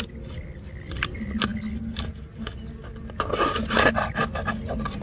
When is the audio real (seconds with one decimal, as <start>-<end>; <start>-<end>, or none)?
0.0-5.0